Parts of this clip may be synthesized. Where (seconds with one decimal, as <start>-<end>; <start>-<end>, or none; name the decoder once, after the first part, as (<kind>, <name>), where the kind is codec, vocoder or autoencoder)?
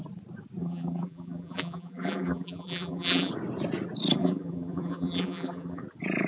0.6-3.3 (vocoder, BigVGAN v2); 4.2-5.8